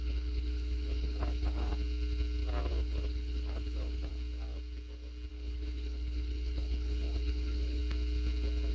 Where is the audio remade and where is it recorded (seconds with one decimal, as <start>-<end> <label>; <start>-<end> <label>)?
0.0-1.7 remade; 1.7-2.7 recorded; 2.7-4.1 remade; 4.1-5.3 recorded; 5.3-7.8 remade; 7.8-8.7 recorded